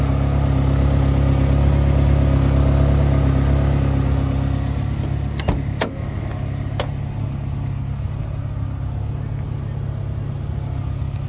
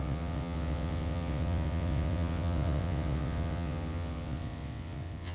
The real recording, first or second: first